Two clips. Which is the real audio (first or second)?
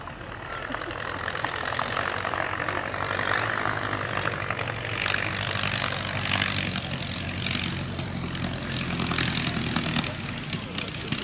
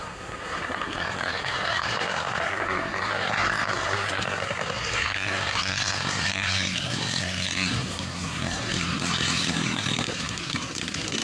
first